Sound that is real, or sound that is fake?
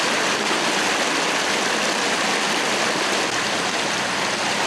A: real